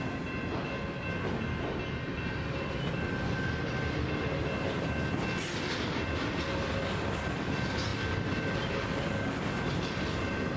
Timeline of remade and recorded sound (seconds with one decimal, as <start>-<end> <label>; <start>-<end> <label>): 0.0-10.6 recorded